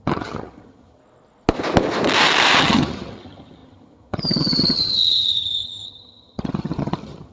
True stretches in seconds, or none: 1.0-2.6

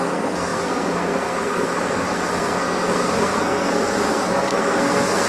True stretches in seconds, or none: none

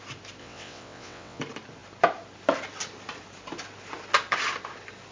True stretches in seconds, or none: 0.0-0.4; 1.4-5.1

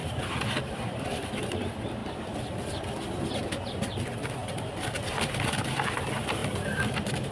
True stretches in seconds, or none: 0.0-7.3

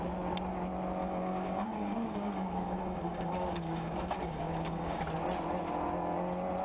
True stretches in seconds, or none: 0.0-1.0; 5.0-6.6

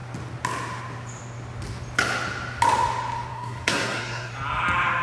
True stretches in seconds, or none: 0.0-3.3; 4.3-5.0